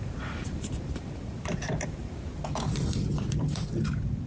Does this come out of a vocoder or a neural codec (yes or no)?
yes